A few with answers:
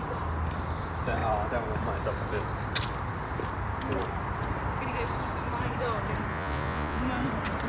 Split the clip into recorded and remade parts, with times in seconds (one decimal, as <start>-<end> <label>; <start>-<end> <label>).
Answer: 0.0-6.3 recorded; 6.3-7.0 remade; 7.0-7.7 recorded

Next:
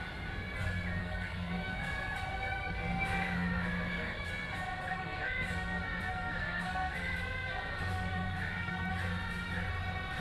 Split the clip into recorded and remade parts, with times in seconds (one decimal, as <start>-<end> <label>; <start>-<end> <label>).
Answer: 0.0-1.0 recorded; 1.0-4.3 remade; 4.3-4.9 recorded; 4.9-8.9 remade; 8.9-10.2 recorded

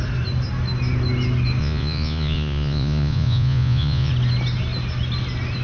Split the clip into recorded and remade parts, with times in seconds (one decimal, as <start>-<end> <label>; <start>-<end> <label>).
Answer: 0.0-1.6 recorded; 1.6-4.1 remade; 4.1-5.6 recorded